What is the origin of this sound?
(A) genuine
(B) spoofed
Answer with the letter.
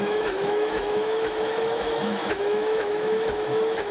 B